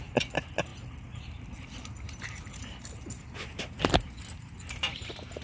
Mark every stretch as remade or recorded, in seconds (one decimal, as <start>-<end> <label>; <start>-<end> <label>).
0.0-5.4 recorded